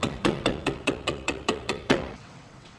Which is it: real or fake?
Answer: fake